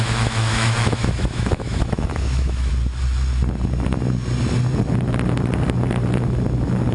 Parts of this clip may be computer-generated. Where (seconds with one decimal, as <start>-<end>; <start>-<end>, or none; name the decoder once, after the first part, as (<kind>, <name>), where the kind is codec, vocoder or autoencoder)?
0.0-2.7 (autoencoder, DAC-VAE)